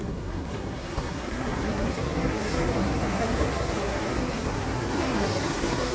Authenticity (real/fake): fake